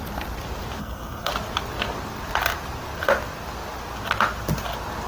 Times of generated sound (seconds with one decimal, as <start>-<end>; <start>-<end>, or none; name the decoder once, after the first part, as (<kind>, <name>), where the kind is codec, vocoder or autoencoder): 0.8-1.3 (codec, SNAC)